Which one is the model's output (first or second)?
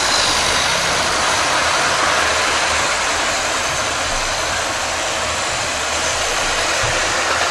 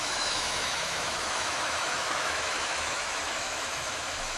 second